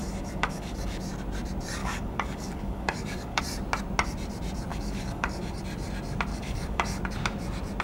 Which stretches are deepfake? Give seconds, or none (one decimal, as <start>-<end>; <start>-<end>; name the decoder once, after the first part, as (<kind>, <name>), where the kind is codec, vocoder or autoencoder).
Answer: 0.0-1.0 (codec, DAC); 1.8-3.4; 4.7-5.6; 6.3-7.0